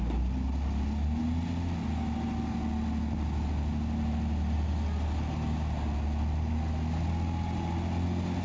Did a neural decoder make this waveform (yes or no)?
no